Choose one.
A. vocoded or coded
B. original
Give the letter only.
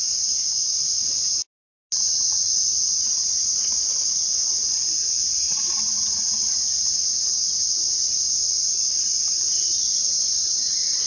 B